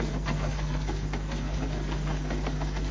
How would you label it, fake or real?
fake